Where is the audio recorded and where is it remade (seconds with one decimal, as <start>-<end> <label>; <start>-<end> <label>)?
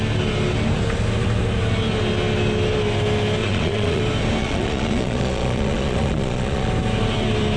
0.0-3.4 recorded; 3.4-4.0 remade; 4.0-4.4 recorded; 4.4-6.7 remade; 6.7-7.6 recorded